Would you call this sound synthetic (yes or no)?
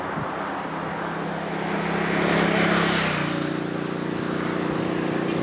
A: no